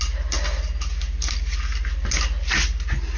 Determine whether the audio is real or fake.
real